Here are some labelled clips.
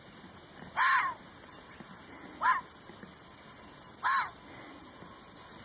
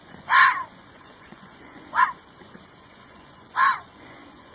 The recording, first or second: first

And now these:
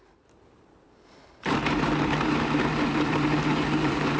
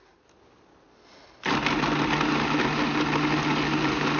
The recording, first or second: second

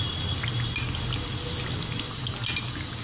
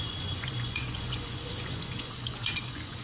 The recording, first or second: first